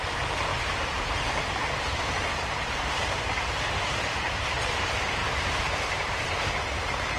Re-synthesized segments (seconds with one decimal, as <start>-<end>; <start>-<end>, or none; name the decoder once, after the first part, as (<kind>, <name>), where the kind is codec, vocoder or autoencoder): 0.5-4.5 (vocoder, BigVGAN v2); 5.2-6.5